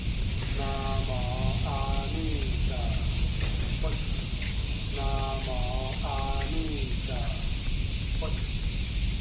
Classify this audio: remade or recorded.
recorded